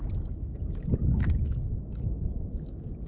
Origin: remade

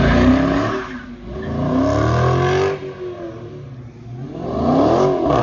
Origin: recorded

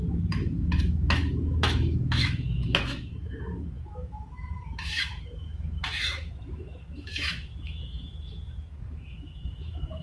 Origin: remade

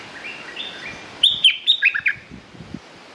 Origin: recorded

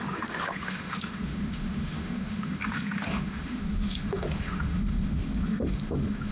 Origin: remade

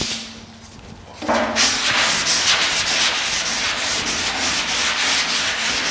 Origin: recorded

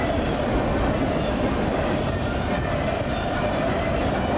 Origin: recorded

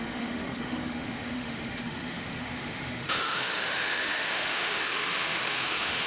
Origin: remade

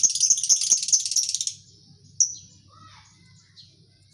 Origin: recorded